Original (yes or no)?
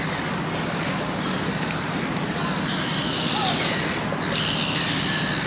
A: yes